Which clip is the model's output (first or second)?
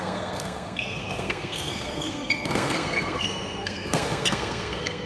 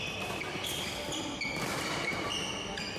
first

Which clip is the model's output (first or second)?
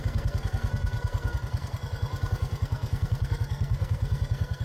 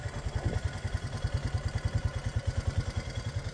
first